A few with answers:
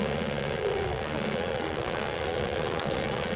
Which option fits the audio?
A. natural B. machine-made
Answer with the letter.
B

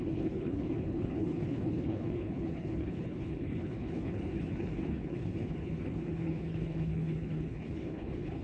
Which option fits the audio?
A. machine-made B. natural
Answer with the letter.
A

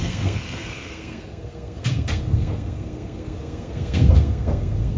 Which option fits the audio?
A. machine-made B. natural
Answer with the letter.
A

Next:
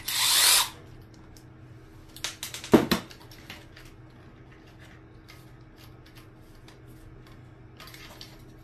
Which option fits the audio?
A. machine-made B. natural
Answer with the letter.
B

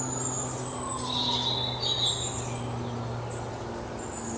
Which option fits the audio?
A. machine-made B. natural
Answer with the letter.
B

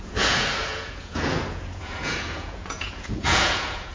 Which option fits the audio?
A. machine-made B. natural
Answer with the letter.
A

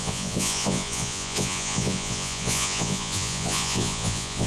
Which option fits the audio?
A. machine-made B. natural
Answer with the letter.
A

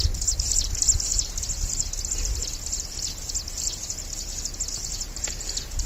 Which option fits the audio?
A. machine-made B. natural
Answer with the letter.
B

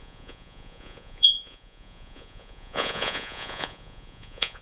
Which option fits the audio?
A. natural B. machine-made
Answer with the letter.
B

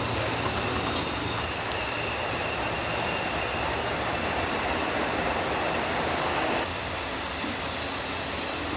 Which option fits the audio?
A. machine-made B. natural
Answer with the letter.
B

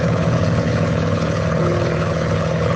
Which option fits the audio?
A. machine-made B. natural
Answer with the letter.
A